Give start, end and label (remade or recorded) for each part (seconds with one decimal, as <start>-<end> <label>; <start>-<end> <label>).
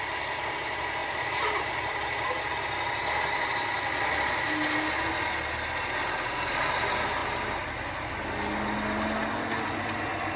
0.0-1.0 recorded; 1.0-2.5 remade; 2.5-7.2 recorded; 7.2-8.1 remade; 8.1-10.4 recorded